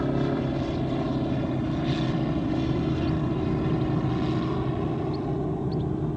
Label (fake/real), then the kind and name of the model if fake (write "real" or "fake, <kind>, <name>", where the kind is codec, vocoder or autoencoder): real